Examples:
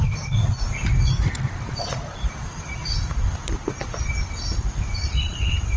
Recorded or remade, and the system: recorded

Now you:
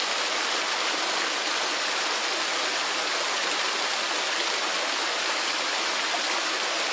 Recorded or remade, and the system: recorded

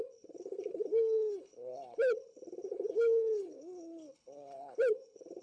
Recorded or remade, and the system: remade, codec, HILCodec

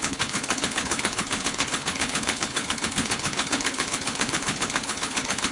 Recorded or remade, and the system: remade, codec, HILCodec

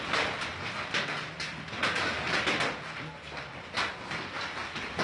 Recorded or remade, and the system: recorded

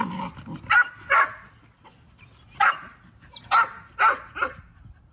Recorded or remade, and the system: recorded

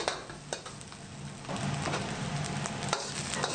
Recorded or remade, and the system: recorded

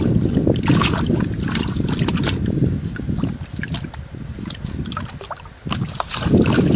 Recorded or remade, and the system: recorded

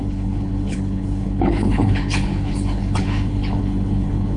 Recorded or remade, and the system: remade, codec, HILCodec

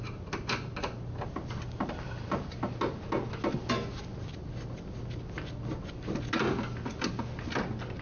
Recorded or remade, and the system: recorded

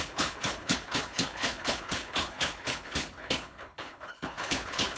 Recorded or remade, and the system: remade, codec, HILCodec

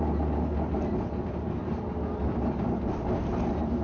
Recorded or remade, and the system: recorded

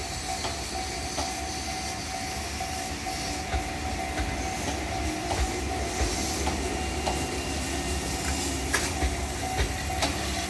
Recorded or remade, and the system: recorded